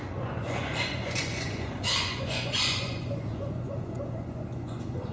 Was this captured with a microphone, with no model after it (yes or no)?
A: no